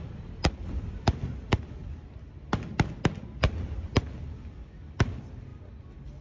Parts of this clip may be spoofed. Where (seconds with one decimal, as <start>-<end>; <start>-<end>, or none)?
1.8-3.9